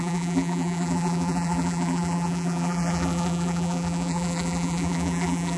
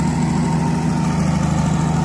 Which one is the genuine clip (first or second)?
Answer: second